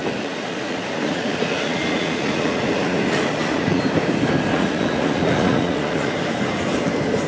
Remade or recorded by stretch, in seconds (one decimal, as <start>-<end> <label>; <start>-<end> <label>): 0.0-3.8 remade; 3.8-4.5 recorded; 4.5-6.1 remade; 6.1-7.3 recorded